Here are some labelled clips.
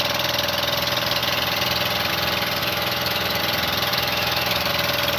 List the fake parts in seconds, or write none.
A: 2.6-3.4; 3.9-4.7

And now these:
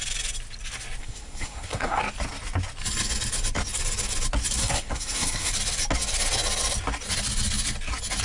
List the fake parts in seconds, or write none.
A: 1.0-2.0; 4.6-5.5

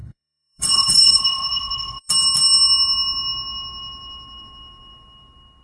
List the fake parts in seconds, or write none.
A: 0.0-2.1